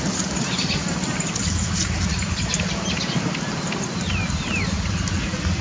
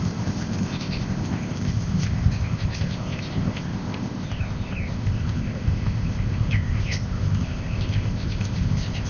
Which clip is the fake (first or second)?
second